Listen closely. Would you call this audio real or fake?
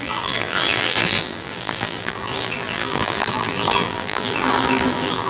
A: fake